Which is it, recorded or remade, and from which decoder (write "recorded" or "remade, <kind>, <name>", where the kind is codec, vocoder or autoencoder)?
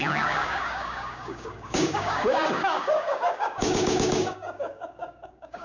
remade, codec, DAC